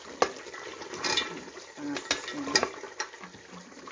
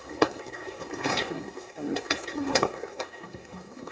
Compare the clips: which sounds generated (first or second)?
second